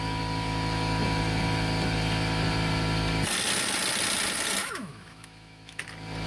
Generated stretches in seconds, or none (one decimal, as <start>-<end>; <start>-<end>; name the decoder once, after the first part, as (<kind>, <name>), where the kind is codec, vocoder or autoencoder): 4.6-5.8 (autoencoder, DAC-VAE)